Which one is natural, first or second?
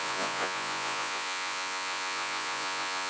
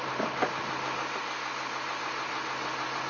second